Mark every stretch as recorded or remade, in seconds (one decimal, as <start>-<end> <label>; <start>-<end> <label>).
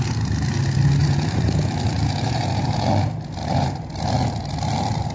0.0-1.0 recorded; 1.0-2.9 remade; 2.9-3.4 recorded; 3.4-3.9 remade; 3.9-5.1 recorded